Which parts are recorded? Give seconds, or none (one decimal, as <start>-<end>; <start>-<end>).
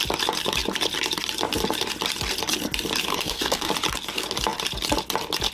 0.0-3.1; 3.7-5.5